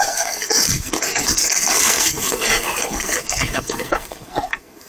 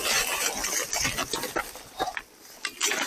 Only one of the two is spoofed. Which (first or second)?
first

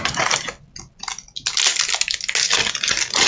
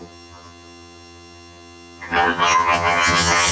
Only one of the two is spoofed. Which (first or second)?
second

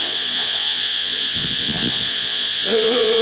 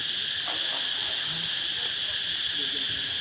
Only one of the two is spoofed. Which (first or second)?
first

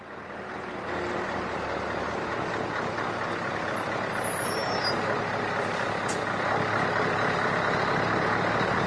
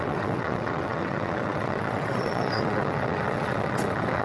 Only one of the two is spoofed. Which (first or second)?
second